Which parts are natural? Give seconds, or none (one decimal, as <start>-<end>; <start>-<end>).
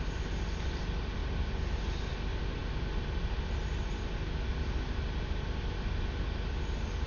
0.0-7.1